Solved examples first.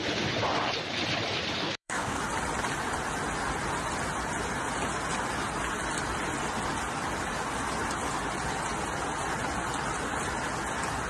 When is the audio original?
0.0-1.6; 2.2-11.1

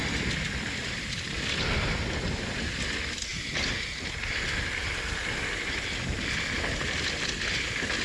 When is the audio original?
0.0-8.0

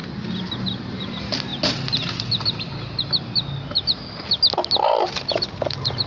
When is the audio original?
0.0-6.1

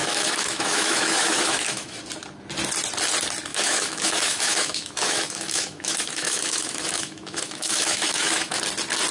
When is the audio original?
2.0-3.5; 8.6-9.1

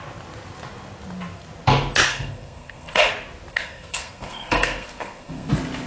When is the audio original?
0.0-2.1; 3.1-3.5; 5.5-5.9

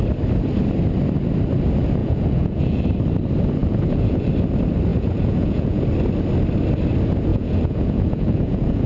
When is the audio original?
0.0-2.0; 2.8-3.6; 4.3-4.9; 5.8-7.3

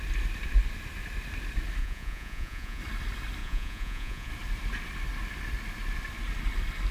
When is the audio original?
0.0-1.8; 2.8-3.4; 4.3-6.9